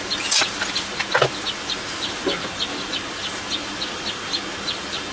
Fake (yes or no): no